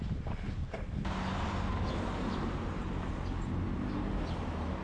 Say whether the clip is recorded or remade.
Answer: recorded